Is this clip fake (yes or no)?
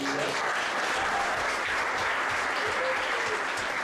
no